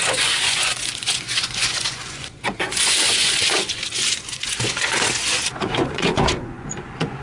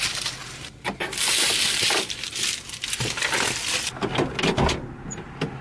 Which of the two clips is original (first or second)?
second